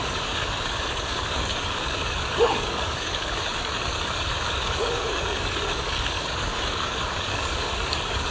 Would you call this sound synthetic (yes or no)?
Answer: yes